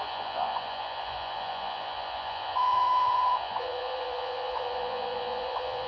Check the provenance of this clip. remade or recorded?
remade